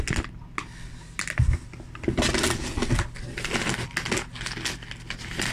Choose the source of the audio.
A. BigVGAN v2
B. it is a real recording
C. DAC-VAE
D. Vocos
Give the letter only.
B